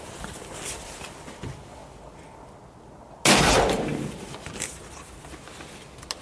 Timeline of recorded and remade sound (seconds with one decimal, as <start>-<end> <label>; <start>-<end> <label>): 0.0-6.2 recorded

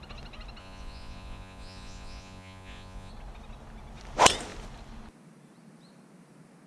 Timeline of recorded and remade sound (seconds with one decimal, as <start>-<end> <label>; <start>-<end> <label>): 0.0-0.6 recorded; 0.6-3.1 remade; 3.1-6.7 recorded

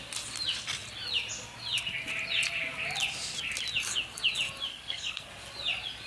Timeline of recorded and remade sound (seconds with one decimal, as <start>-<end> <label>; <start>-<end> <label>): 0.0-4.7 recorded; 4.7-5.3 remade; 5.3-6.1 recorded

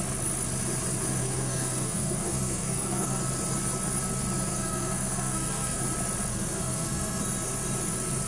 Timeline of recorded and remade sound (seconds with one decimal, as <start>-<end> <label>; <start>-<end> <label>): 0.0-1.2 recorded; 1.2-3.2 remade; 3.2-4.5 recorded; 4.5-5.8 remade; 5.8-6.3 recorded; 6.3-7.2 remade; 7.2-8.3 recorded

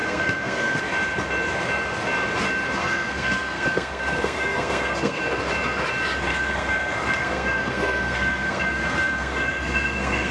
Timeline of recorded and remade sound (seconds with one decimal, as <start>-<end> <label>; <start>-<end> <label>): 0.0-0.8 remade; 0.8-2.8 recorded; 2.8-5.2 remade; 5.2-6.3 recorded; 6.3-10.3 remade

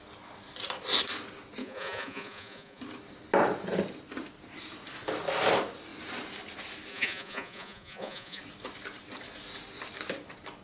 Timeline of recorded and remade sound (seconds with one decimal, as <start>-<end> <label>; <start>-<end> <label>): 0.0-1.6 recorded; 1.6-2.8 remade; 2.8-6.9 recorded; 6.9-8.4 remade; 8.4-10.6 recorded